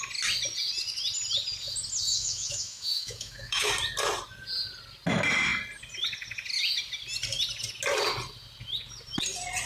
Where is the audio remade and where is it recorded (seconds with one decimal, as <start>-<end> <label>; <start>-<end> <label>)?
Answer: 0.0-2.1 recorded; 2.1-3.7 remade; 3.7-9.7 recorded